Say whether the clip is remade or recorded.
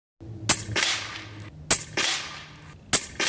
recorded